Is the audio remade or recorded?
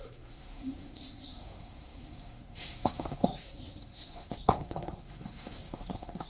remade